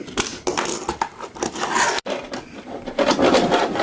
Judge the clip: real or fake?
real